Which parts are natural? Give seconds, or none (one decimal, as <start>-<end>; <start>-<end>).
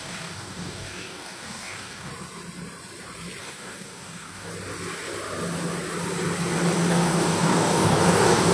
2.1-3.4; 4.5-6.9